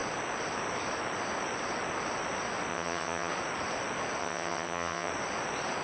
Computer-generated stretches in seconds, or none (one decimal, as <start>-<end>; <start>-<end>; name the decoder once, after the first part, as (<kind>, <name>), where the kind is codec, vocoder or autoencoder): 2.7-3.3 (vocoder, HiFi-GAN); 4.2-5.1